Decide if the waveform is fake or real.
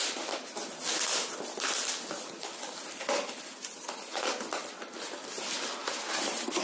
real